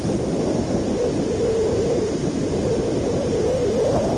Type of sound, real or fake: real